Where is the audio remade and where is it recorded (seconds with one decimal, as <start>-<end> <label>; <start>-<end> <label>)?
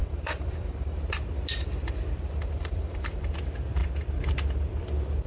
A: 0.0-1.1 remade; 1.1-2.6 recorded; 2.6-3.2 remade; 3.2-5.3 recorded